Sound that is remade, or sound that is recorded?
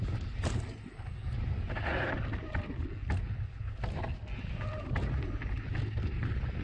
recorded